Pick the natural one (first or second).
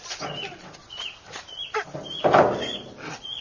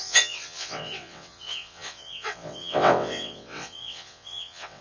first